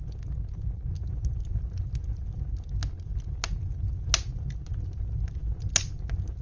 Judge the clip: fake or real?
real